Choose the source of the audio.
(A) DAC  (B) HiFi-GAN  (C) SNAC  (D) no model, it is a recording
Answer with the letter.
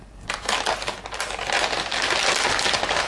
D